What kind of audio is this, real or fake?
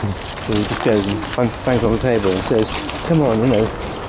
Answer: real